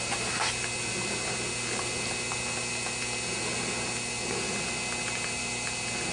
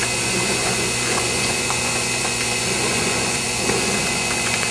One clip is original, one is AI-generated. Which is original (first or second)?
first